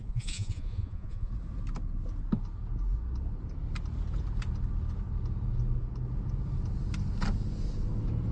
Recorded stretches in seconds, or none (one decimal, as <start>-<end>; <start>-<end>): 1.3-8.3